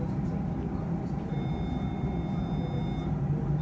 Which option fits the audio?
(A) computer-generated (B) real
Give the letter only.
B